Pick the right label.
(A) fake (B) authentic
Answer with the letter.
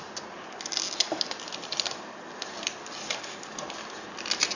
B